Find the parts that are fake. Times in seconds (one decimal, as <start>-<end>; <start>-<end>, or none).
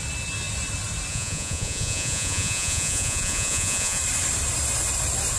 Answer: 1.1-4.0